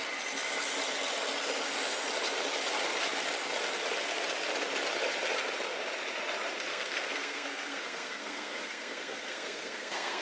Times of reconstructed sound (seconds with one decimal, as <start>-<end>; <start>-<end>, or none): 6.7-10.2